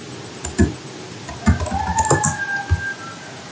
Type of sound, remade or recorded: recorded